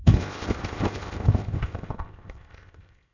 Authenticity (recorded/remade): remade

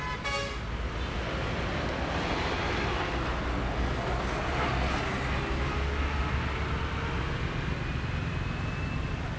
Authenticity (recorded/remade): recorded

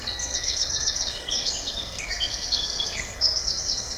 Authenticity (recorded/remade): remade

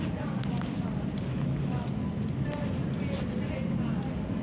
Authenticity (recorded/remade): recorded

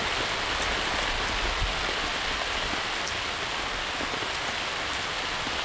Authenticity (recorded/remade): recorded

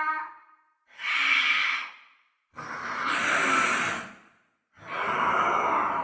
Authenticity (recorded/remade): recorded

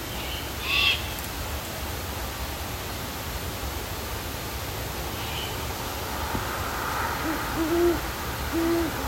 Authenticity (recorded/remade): recorded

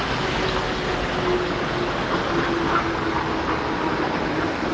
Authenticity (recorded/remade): recorded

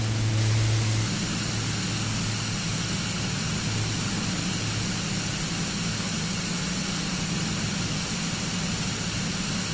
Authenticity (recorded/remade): recorded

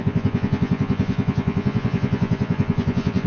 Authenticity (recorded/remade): remade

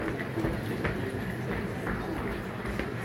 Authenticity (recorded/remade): recorded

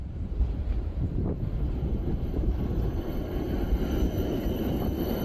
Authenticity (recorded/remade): remade